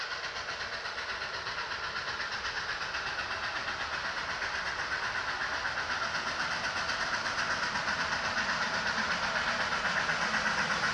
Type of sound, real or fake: real